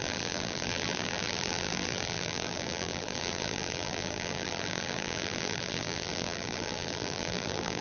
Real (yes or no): no